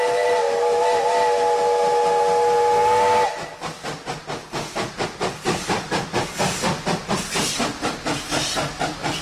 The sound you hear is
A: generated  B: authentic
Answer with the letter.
B